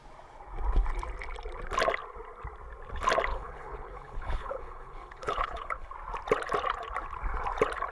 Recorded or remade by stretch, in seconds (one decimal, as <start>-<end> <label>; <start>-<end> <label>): 0.0-3.3 recorded; 3.3-5.9 remade; 5.9-7.9 recorded